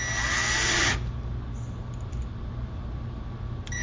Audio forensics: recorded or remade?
recorded